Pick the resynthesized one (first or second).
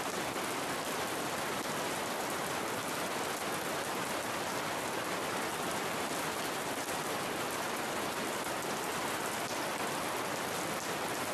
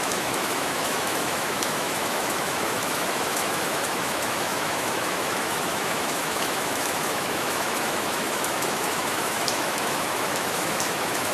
second